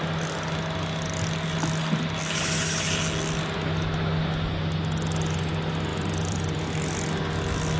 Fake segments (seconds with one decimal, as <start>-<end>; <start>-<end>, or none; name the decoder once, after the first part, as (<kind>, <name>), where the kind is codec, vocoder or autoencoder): 5.9-6.6 (vocoder, BigVGAN v2)